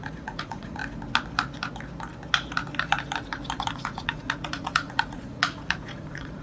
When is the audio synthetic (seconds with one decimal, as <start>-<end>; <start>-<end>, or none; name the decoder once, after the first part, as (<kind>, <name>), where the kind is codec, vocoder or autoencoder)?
0.0-0.8 (vocoder, Vocos); 3.7-6.4